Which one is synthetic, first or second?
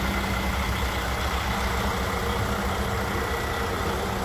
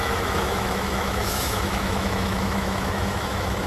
second